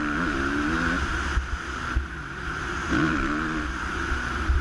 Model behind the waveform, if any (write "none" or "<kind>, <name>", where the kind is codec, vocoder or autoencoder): none